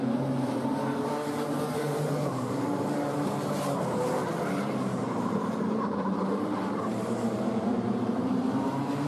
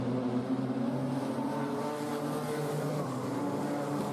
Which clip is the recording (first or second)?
second